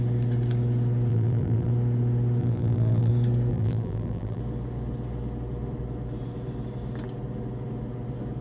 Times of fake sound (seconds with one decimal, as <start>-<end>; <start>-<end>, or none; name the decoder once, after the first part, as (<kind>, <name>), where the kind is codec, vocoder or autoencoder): 1.1-1.7 (vocoder, BigVGAN v2); 2.4-3.1; 3.5-4.4